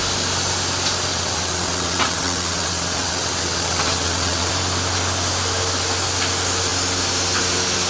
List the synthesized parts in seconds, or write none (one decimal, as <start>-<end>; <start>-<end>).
1.1-4.5